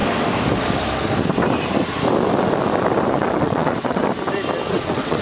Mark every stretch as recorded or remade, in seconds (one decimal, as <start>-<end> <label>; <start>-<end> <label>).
0.0-3.1 recorded; 3.1-4.0 remade; 4.0-4.7 recorded; 4.7-5.2 remade